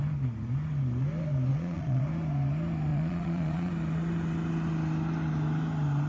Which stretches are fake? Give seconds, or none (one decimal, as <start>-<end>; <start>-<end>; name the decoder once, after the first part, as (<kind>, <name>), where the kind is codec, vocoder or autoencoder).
1.5-2.0 (vocoder, Vocos); 2.9-3.7